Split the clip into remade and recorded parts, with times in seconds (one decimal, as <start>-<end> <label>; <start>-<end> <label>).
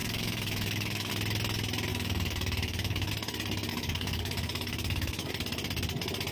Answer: 0.0-1.1 remade; 1.1-1.9 recorded; 1.9-3.1 remade; 3.1-3.7 recorded; 3.7-5.3 remade; 5.3-6.3 recorded